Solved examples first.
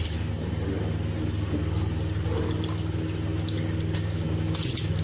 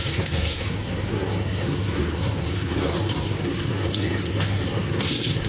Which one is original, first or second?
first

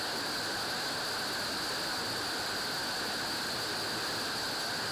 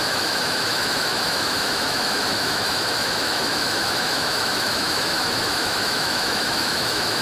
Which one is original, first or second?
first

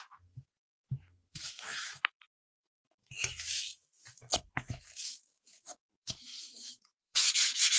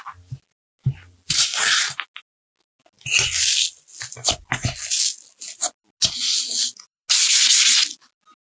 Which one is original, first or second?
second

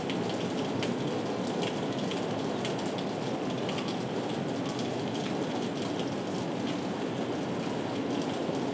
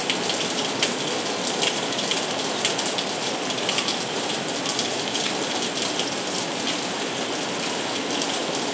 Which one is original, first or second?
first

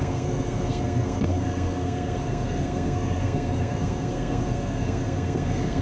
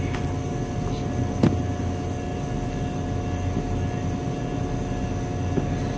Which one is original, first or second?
second